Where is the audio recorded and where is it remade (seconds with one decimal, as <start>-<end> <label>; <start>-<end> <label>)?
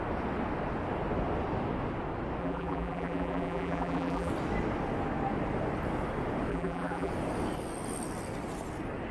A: 0.0-2.4 recorded; 2.4-4.3 remade; 4.3-6.5 recorded; 6.5-7.1 remade; 7.1-9.1 recorded